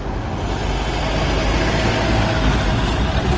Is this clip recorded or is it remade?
recorded